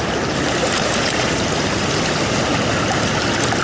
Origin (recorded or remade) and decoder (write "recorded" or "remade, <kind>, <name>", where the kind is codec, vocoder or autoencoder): recorded